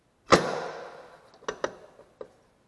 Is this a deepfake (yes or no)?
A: no